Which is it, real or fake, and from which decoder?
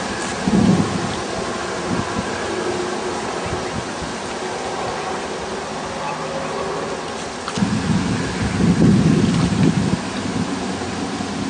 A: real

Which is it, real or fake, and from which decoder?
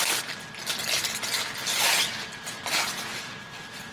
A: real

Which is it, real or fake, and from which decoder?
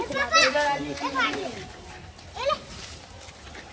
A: real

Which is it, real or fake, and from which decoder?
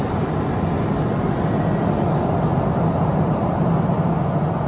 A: real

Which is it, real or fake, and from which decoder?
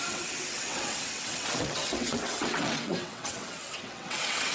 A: fake, vocoder, WaveNeXt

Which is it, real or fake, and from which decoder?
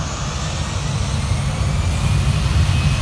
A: real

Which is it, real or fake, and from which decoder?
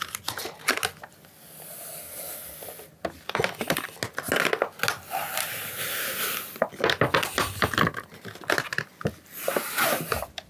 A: real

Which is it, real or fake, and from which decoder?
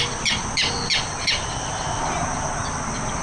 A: real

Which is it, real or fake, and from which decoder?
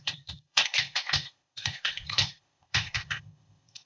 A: fake, codec, ZipCodec